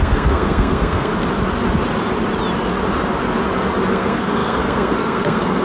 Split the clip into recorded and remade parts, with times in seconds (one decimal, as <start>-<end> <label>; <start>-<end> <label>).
0.0-1.1 remade; 1.1-3.9 recorded; 3.9-5.6 remade